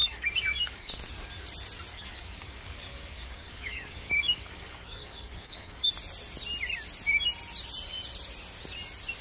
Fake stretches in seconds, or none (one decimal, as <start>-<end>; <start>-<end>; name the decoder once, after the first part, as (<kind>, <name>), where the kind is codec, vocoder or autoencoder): 0.0-0.9 (codec, DAC); 1.9-5.9

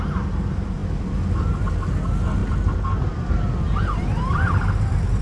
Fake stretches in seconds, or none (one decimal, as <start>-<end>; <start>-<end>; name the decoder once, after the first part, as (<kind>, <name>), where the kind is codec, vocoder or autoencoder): none

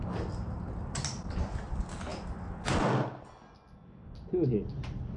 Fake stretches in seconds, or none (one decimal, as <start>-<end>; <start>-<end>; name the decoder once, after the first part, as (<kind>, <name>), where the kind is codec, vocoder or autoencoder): none

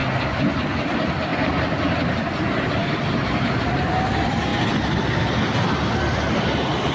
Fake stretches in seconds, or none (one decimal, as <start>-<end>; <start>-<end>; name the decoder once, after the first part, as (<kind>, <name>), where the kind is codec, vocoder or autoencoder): 1.3-2.0 (vocoder, BigVGAN v2); 2.8-3.5

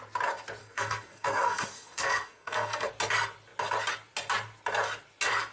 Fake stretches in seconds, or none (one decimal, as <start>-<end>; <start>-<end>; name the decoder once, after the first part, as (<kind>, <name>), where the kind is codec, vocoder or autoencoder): 0.6-2.9 (codec, SNAC)

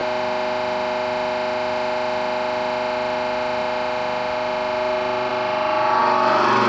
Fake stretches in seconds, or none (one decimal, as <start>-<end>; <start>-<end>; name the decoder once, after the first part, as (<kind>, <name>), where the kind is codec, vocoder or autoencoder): none

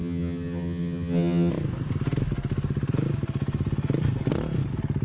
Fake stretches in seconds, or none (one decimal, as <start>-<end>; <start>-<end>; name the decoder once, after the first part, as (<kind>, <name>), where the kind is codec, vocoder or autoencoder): 0.0-1.5 (vocoder, HiFi-GAN)